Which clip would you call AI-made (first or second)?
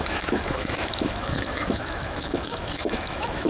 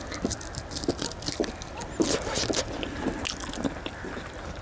first